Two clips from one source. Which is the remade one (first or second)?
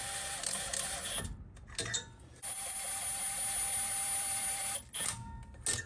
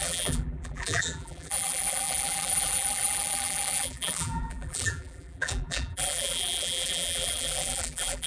second